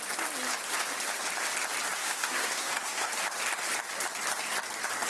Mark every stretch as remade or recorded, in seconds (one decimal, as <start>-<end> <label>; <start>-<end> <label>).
0.0-2.0 recorded; 2.0-3.1 remade; 3.1-5.1 recorded